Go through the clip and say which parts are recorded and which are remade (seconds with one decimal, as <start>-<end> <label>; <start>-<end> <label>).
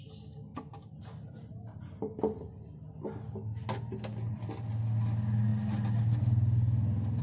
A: 0.0-0.5 recorded; 0.5-2.2 remade; 2.2-7.2 recorded